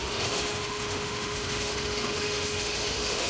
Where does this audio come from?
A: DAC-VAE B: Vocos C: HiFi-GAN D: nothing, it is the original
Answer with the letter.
A